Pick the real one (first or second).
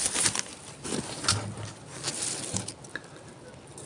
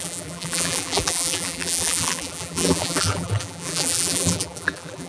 first